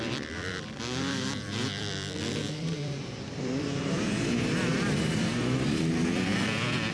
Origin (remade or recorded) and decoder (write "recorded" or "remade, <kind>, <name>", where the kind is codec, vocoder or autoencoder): remade, vocoder, BigVGAN v2